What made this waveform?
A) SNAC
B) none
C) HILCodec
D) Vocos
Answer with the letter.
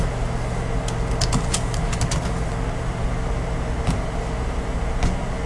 B